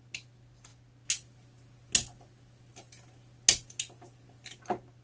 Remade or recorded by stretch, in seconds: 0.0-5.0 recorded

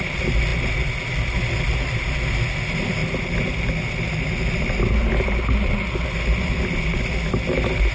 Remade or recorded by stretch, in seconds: 0.0-7.9 recorded

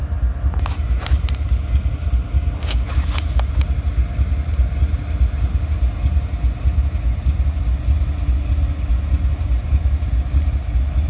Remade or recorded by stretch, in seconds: 0.0-11.1 recorded

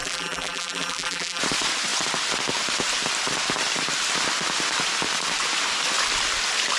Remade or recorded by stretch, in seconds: 0.0-1.4 remade; 1.4-6.8 recorded

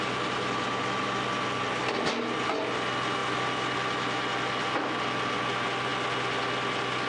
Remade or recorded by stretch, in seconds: 0.0-7.1 recorded

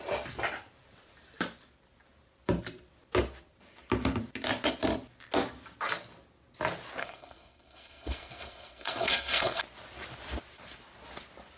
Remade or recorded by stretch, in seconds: 0.0-7.0 recorded; 7.0-9.6 remade; 9.6-11.6 recorded

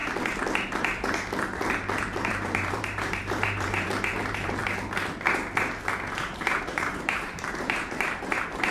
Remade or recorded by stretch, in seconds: 0.0-2.0 recorded; 2.0-4.6 remade; 4.6-6.1 recorded; 6.1-8.7 remade